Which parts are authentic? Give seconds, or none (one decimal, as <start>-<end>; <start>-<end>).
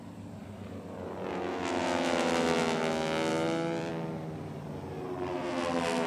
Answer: 0.0-0.4; 1.3-3.3; 3.9-6.1